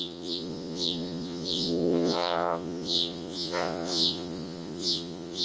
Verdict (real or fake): fake